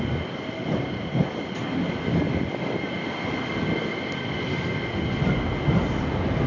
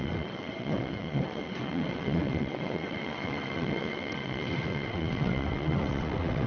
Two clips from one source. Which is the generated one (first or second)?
second